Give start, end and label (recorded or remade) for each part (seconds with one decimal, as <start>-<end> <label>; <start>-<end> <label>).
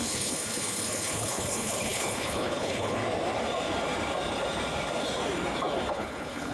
0.0-3.0 remade; 3.0-5.9 recorded; 5.9-6.5 remade